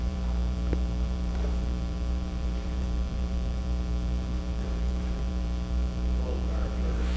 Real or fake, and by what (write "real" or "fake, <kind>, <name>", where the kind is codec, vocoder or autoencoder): fake, vocoder, BigVGAN v2